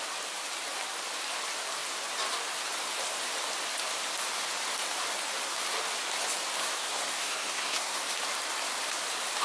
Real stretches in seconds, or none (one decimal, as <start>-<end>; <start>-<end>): 0.0-6.6; 8.0-9.4